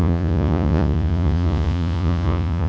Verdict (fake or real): fake